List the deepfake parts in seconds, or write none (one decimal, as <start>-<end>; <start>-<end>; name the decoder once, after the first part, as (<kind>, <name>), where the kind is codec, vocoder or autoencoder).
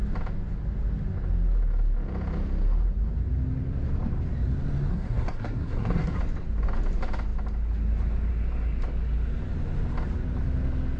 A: 4.9-6.2 (codec, SNAC)